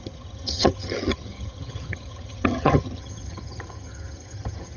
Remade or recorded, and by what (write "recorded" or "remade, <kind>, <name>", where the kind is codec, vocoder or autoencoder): remade, vocoder, HiFi-GAN